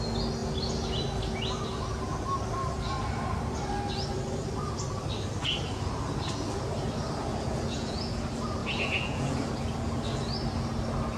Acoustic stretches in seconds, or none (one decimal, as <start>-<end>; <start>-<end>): 0.0-7.3; 8.2-8.6; 9.4-11.2